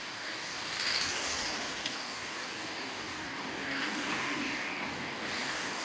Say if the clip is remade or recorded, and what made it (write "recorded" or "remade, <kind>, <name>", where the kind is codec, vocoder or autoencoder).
remade, codec, DAC